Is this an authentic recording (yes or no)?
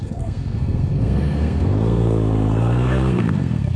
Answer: no